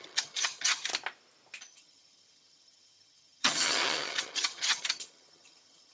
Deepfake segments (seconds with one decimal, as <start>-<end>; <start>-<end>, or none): 0.0-0.9; 1.6-5.9